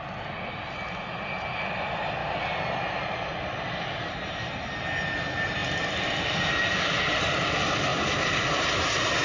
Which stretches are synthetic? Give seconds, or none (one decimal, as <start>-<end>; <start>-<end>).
5.6-6.6; 7.9-8.7